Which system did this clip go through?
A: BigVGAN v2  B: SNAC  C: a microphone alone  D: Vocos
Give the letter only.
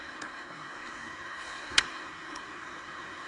B